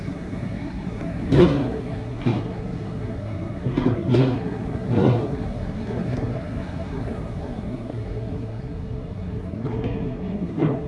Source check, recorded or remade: remade